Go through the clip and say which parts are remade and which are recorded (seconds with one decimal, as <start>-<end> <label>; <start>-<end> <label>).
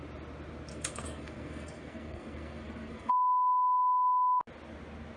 0.0-0.7 recorded; 0.7-3.1 remade; 3.1-5.2 recorded